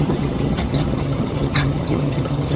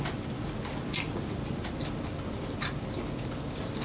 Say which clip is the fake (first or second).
first